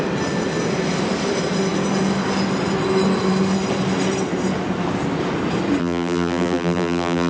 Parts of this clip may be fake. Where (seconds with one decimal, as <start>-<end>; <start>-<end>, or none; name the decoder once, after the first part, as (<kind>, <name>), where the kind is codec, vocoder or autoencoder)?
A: 5.8-7.3 (vocoder, BigVGAN v2)